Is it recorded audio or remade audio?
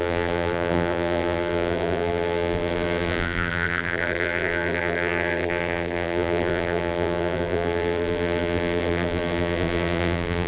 remade